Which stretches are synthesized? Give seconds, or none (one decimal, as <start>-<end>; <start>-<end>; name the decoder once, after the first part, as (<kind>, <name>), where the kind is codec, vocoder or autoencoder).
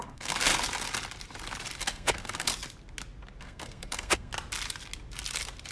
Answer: 0.0-0.5 (codec, SNAC); 1.8-2.5; 3.4-4.3